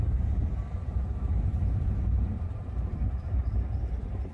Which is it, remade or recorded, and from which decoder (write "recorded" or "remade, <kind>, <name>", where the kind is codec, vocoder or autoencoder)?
remade, vocoder, BigVGAN v2